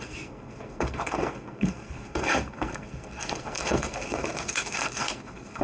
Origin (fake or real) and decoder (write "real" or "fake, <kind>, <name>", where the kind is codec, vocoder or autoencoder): fake, codec, SNAC